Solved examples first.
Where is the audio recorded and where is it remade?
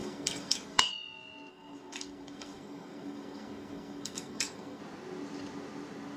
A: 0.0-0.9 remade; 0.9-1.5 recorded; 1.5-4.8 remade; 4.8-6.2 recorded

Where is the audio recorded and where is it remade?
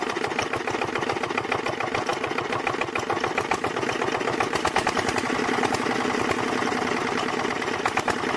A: 0.0-8.4 recorded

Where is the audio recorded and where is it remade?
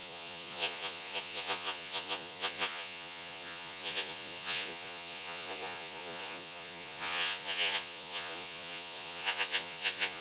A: 0.0-10.2 remade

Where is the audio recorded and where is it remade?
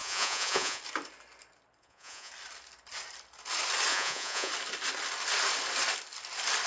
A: 0.0-0.8 remade; 0.8-1.8 recorded; 1.8-2.3 remade; 2.3-3.9 recorded; 3.9-4.5 remade; 4.5-6.7 recorded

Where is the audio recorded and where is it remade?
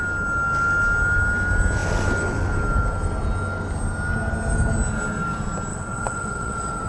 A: 0.0-5.7 recorded; 5.7-6.9 remade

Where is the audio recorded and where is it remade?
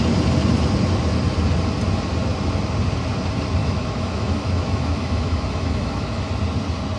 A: 0.0-3.6 recorded; 3.6-6.3 remade; 6.3-7.0 recorded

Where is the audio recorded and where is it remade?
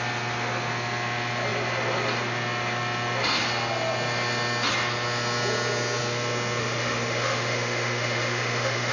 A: 0.0-6.6 recorded; 6.6-8.9 remade